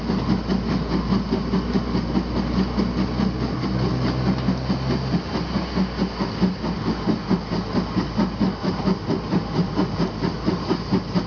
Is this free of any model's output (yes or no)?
yes